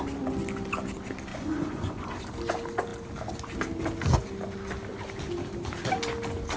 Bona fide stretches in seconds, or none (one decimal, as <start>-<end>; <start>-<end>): 0.0-1.3; 2.2-6.6